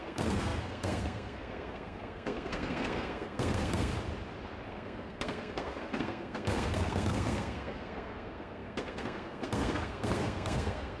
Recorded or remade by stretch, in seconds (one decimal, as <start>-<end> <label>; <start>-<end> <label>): 0.0-3.9 remade; 3.9-4.7 recorded; 4.7-11.0 remade